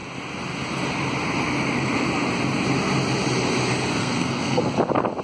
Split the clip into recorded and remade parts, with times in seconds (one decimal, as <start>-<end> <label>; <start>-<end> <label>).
0.0-4.0 recorded; 4.0-4.7 remade; 4.7-5.2 recorded